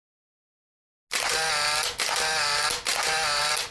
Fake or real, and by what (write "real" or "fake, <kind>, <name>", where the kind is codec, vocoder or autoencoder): real